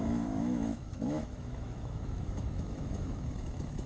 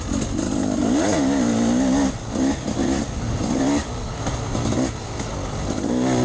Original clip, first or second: second